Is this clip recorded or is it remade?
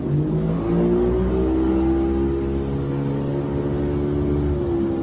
recorded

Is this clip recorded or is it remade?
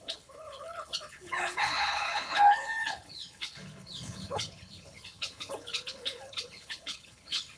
remade